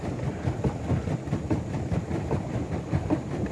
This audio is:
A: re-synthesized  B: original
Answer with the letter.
B